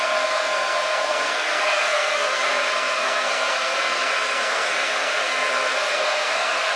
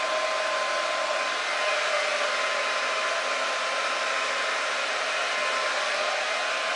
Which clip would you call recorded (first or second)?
second